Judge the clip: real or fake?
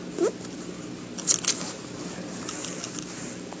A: real